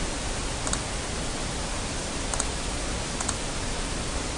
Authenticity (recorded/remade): recorded